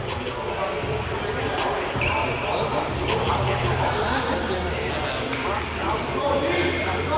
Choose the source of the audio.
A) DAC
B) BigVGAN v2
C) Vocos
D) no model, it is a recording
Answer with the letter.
D